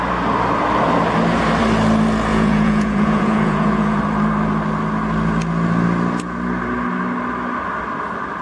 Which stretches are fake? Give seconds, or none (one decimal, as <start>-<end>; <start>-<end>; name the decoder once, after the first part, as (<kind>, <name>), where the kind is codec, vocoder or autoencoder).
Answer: 2.3-4.0 (vocoder, Vocos)